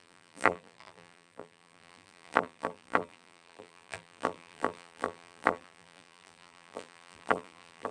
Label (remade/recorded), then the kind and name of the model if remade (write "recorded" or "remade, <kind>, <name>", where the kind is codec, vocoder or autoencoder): remade, vocoder, BigVGAN v2